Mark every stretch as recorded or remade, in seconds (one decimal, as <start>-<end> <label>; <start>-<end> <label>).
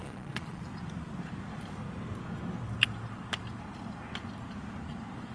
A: 0.0-0.6 remade; 0.6-5.3 recorded